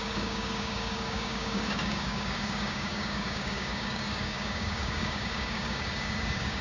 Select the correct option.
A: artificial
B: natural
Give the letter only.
A